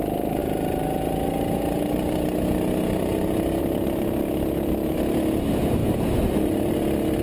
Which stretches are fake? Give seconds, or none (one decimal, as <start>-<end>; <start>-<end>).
none